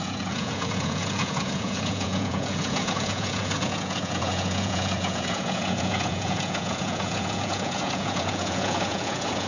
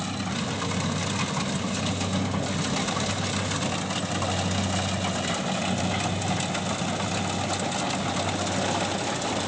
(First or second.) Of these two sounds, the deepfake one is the first